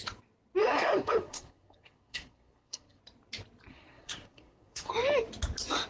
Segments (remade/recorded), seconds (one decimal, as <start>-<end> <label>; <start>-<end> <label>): 0.0-0.6 recorded; 0.6-3.0 remade; 3.0-3.7 recorded; 3.7-4.9 remade; 4.9-5.9 recorded